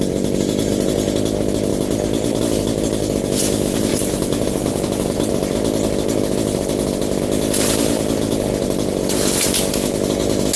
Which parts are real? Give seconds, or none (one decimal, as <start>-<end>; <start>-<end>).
0.0-3.9; 5.3-10.6